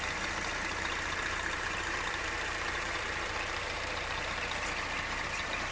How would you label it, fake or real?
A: fake